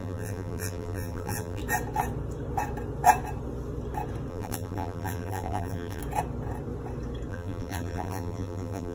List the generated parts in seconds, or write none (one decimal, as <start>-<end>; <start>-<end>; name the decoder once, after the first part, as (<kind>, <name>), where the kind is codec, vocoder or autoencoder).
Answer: 0.0-1.6 (vocoder, BigVGAN v2); 4.3-6.0; 7.3-8.9